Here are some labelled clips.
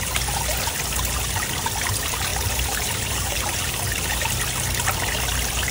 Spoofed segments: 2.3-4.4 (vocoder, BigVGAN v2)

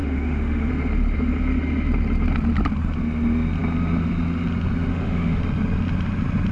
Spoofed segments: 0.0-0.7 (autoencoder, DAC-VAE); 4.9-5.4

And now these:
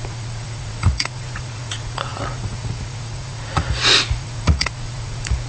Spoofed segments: 0.0-5.5 (vocoder, Vocos)

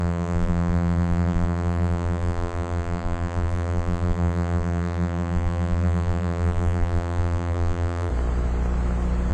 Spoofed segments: 0.0-8.1 (vocoder, BigVGAN v2)